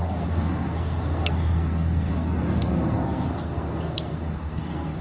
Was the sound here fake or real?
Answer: fake